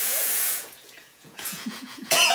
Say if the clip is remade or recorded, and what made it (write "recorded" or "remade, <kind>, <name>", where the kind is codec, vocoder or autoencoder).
remade, vocoder, Vocos